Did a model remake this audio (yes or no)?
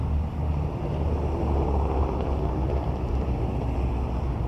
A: no